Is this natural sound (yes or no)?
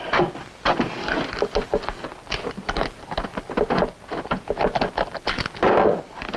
yes